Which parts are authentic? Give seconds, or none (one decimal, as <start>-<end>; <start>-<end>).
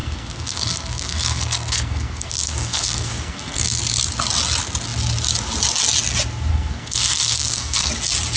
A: 3.8-6.5; 7.9-8.4